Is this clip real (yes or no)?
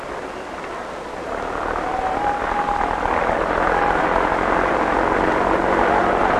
yes